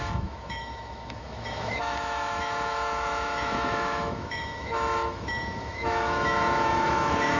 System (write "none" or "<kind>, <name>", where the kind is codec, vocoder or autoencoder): autoencoder, DAC-VAE